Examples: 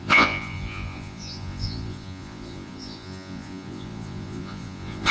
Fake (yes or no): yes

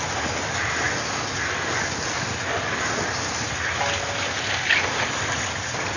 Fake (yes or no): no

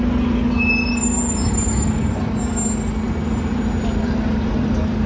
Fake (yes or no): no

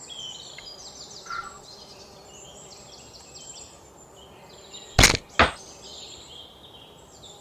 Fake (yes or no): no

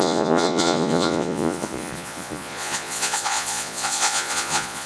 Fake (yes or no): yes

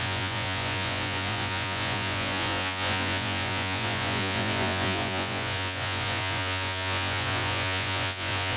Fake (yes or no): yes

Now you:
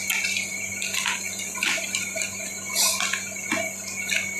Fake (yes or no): no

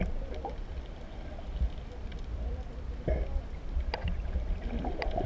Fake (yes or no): no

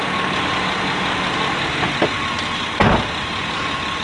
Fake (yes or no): no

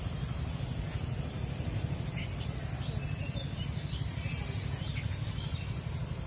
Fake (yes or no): no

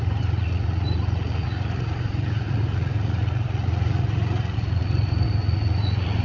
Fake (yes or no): yes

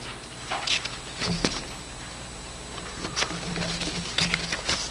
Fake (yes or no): no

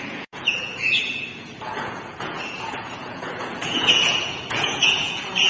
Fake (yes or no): yes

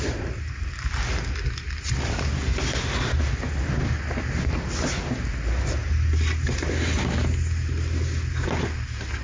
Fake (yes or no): no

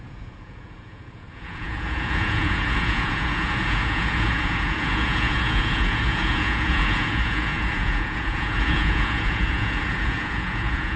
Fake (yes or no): yes